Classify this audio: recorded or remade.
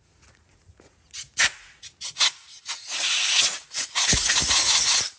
remade